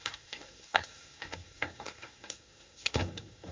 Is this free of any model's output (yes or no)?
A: no